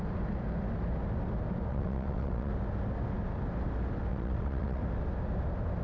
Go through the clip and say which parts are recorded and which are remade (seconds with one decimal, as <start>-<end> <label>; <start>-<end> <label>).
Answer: 0.0-1.7 recorded; 1.7-2.5 remade; 2.5-4.1 recorded; 4.1-4.8 remade; 4.8-5.8 recorded